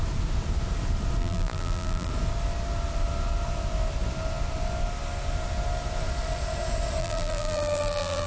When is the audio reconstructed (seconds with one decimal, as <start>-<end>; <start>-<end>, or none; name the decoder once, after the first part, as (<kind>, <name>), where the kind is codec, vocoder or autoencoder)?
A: 1.2-2.1 (vocoder, BigVGAN v2); 7.0-8.3